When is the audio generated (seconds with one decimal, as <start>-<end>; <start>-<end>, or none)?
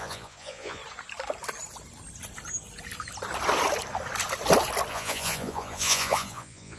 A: 0.0-0.8; 4.9-6.8